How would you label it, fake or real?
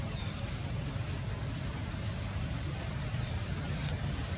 fake